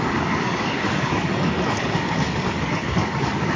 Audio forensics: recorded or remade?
remade